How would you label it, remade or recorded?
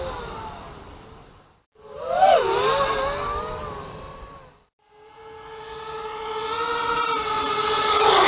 recorded